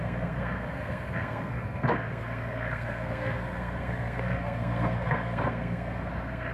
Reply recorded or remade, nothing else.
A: remade